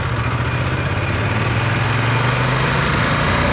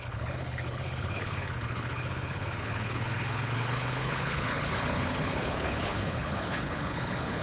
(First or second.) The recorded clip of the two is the first